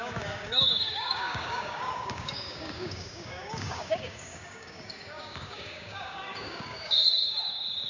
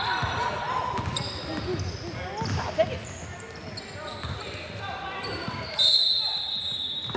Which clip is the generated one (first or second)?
first